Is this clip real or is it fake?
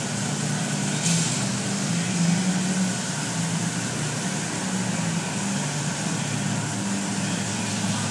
real